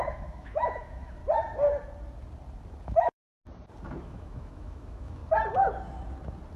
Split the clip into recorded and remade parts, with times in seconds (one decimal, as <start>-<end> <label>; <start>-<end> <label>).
0.0-1.2 remade; 1.2-2.8 recorded; 2.8-3.4 remade; 3.4-4.0 recorded; 4.0-5.2 remade; 5.2-6.6 recorded